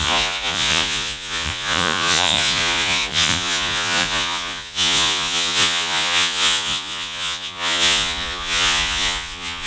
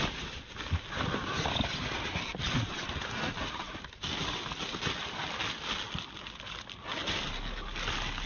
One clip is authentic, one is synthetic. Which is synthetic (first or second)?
first